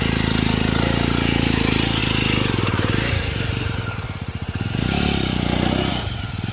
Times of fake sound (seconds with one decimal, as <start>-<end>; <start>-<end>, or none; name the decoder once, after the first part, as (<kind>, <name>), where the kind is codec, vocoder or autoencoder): none